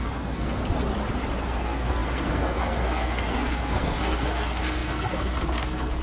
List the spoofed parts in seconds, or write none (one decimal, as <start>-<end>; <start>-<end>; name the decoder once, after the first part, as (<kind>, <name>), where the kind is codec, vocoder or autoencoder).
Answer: 0.0-0.6 (codec, SNAC); 1.4-6.0